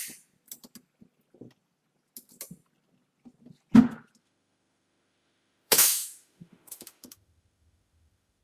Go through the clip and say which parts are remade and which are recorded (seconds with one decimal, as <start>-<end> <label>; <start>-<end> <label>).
0.0-4.2 recorded; 4.2-8.4 remade